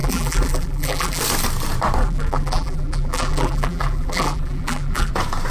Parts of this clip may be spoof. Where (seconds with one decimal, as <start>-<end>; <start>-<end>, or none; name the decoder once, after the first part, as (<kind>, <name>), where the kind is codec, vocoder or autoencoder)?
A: 0.0-1.2 (vocoder, BigVGAN v2); 2.0-5.1